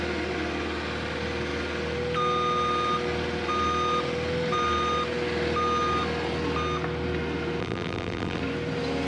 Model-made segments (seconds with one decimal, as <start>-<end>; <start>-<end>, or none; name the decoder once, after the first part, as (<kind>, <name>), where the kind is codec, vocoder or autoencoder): 7.6-8.4 (vocoder, BigVGAN v2)